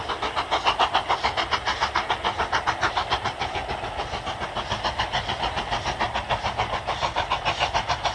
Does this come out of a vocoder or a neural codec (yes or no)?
no